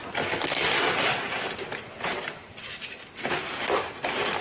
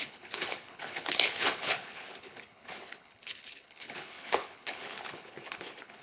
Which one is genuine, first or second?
first